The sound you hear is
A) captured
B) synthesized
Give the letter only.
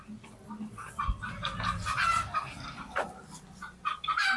B